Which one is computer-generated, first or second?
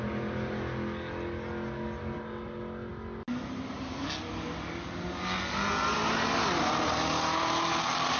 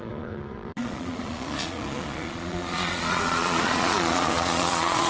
second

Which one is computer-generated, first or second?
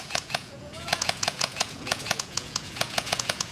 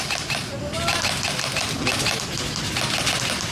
first